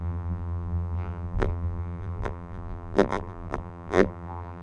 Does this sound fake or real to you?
fake